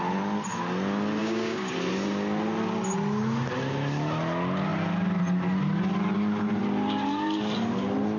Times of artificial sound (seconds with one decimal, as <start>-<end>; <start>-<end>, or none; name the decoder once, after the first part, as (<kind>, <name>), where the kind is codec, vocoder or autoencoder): 1.2-1.7 (codec, DAC)